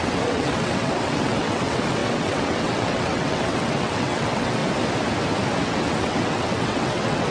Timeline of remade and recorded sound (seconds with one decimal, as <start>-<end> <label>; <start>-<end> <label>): 0.0-4.6 remade; 4.6-5.6 recorded; 5.6-7.3 remade